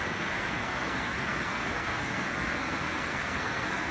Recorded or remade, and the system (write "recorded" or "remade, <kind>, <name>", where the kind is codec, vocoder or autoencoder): remade, codec, SNAC